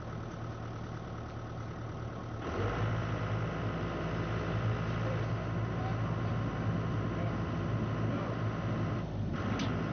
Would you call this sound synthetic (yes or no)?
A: no